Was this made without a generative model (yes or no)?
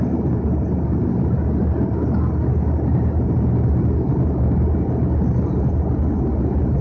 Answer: yes